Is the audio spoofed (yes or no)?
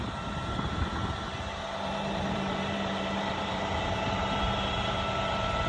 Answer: yes